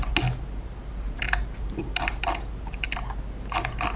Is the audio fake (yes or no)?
no